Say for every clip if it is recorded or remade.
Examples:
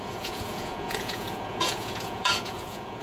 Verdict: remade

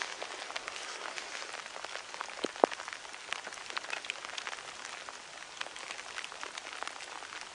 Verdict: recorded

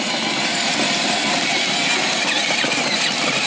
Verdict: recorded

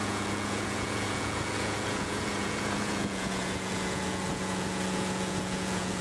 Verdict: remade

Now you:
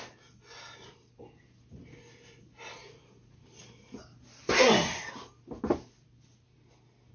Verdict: recorded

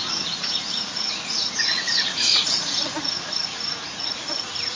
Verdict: remade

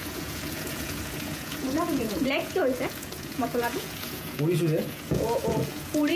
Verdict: remade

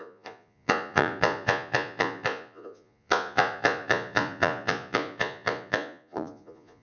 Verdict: remade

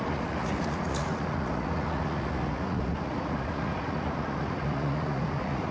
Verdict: remade